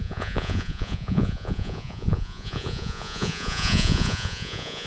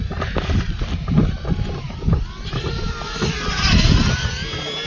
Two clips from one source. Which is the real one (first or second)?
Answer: second